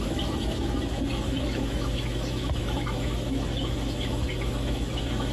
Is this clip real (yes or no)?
no